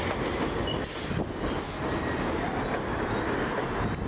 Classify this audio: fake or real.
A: real